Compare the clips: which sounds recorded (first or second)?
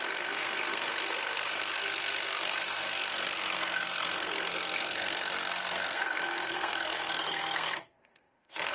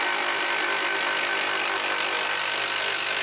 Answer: second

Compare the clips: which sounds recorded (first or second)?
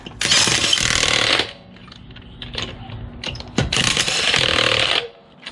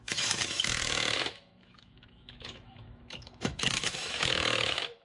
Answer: first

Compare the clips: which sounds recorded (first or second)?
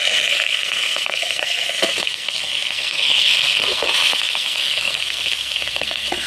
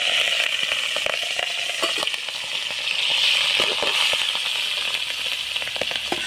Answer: second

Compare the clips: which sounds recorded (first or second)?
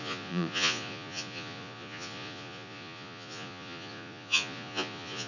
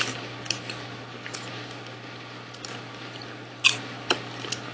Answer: second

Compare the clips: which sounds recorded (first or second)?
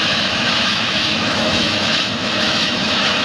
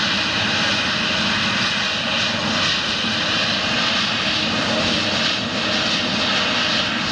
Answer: second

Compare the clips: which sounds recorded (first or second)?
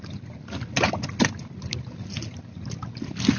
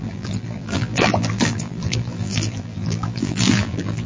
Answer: first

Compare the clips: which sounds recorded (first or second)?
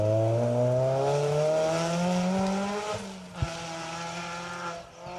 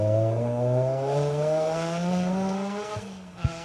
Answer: first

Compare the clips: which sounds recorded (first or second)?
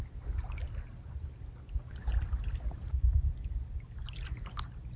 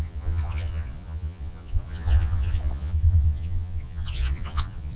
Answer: first